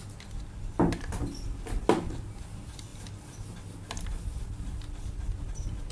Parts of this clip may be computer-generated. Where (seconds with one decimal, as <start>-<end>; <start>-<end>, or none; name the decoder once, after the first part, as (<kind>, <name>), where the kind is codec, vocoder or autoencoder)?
none